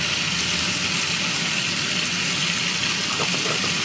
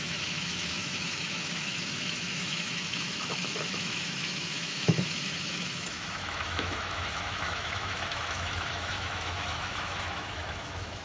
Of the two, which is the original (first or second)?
first